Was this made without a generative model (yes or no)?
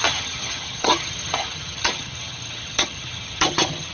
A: no